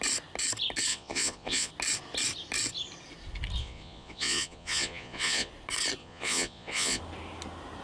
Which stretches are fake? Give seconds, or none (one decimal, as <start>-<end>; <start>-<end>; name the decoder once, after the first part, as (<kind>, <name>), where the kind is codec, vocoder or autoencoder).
0.9-1.7 (vocoder, Vocos); 3.6-5.5; 6.0-7.0

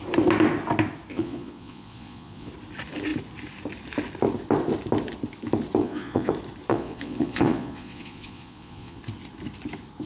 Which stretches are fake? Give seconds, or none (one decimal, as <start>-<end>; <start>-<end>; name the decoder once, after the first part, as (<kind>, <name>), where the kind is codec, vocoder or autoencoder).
1.1-2.5 (vocoder, Vocos); 5.8-6.3; 6.7-9.0

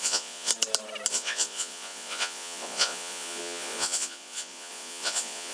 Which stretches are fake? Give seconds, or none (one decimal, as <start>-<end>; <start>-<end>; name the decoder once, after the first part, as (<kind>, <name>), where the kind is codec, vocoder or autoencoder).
0.0-0.5 (vocoder, Vocos); 1.1-5.5